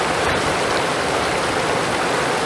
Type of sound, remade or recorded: recorded